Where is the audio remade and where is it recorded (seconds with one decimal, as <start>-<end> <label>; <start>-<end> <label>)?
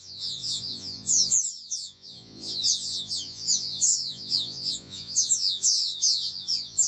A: 0.0-6.9 remade